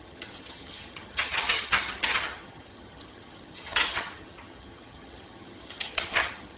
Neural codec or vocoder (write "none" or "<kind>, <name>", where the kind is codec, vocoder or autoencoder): vocoder, HiFi-GAN